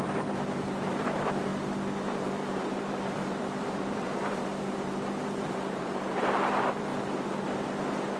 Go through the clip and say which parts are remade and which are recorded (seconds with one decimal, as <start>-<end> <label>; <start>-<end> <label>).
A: 0.0-1.5 remade; 1.5-2.0 recorded; 2.0-6.9 remade; 6.9-8.2 recorded